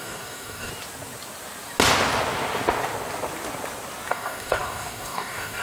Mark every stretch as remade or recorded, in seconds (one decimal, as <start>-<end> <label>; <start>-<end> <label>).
0.0-0.7 remade; 0.7-4.1 recorded; 4.1-5.6 remade